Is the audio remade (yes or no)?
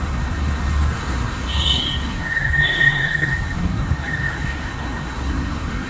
yes